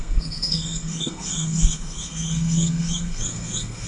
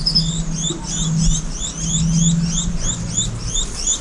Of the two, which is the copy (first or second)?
first